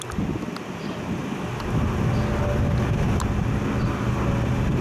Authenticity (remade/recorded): recorded